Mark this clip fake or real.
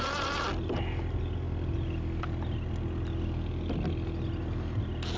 real